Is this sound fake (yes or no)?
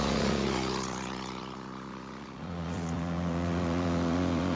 yes